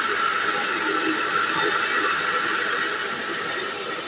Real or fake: real